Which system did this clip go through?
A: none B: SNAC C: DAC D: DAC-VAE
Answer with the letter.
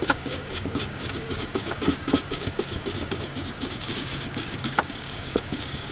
C